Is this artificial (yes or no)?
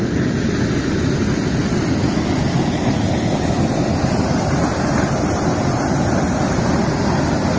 no